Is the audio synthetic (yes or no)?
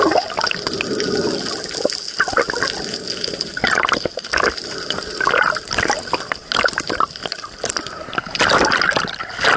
no